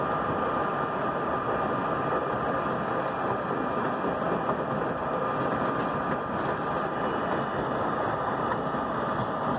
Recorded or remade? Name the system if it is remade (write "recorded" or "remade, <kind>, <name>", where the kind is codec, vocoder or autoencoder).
recorded